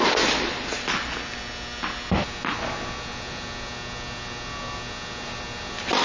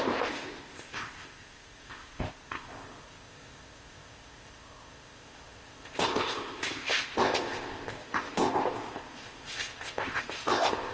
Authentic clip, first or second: first